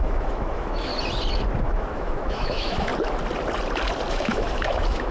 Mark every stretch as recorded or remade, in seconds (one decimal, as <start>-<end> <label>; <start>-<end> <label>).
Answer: 0.0-0.9 remade; 0.9-1.6 recorded; 1.6-2.9 remade; 2.9-4.1 recorded; 4.1-5.1 remade